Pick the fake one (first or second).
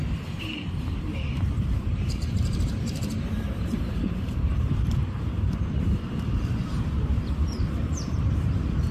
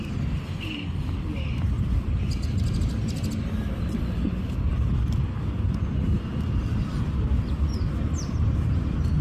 first